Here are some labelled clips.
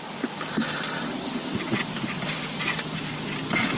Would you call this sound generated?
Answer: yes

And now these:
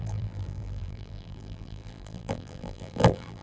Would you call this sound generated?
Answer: yes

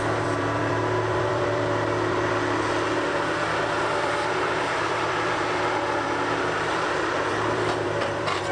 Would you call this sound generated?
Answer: yes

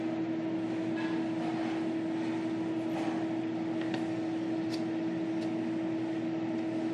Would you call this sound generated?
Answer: no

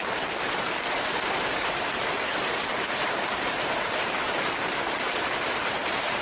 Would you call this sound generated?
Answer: yes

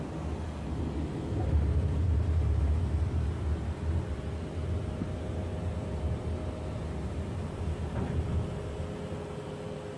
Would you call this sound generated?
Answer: no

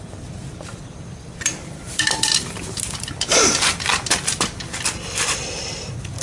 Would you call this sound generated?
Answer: yes